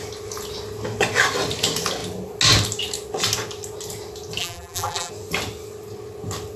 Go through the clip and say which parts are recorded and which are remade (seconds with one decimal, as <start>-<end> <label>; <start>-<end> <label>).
0.0-4.4 recorded; 4.4-5.1 remade; 5.1-6.6 recorded